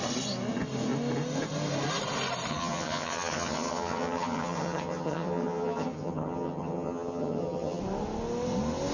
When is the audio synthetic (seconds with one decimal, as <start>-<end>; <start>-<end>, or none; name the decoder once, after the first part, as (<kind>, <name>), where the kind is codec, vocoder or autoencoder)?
2.5-7.8 (vocoder, HiFi-GAN)